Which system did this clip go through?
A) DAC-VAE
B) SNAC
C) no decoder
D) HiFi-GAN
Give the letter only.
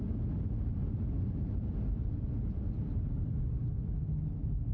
C